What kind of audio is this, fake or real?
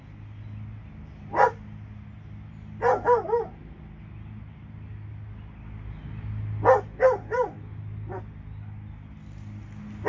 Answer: real